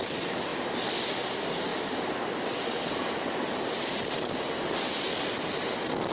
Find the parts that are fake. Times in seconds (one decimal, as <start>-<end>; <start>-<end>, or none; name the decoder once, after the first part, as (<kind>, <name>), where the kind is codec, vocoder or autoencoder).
1.7-5.4 (vocoder, BigVGAN v2)